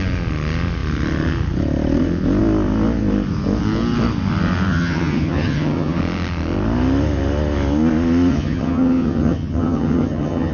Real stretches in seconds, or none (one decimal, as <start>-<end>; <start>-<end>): 0.0-4.7; 6.0-8.3